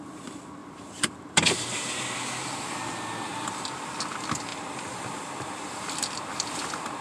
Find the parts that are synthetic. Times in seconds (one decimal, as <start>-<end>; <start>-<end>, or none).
0.6-3.5; 4.5-6.2